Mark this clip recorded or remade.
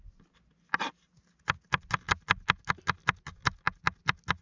recorded